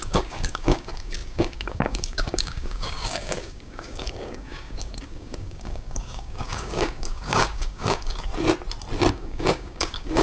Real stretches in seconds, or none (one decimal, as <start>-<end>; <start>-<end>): 8.3-9.1